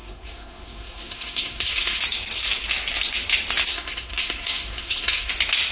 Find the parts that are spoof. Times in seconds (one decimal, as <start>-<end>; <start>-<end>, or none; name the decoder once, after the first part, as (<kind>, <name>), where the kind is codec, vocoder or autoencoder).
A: 0.0-2.0 (codec, SNAC); 3.7-5.3